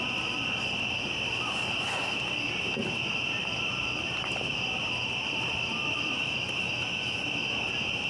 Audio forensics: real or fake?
real